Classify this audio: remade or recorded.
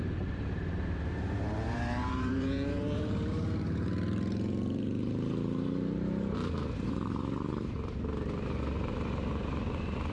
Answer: remade